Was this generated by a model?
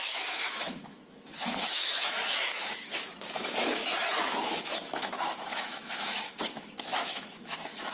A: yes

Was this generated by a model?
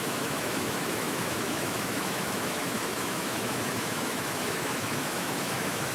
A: yes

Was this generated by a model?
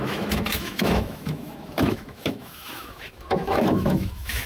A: yes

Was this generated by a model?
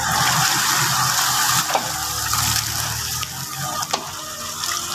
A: no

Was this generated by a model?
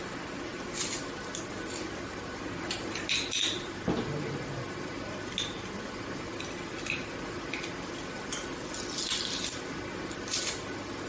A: no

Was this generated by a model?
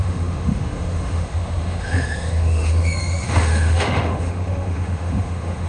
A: yes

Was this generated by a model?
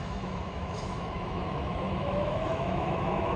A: yes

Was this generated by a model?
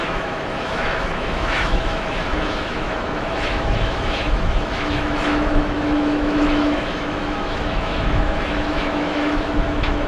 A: yes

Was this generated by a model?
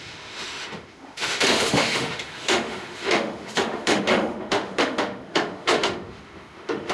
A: yes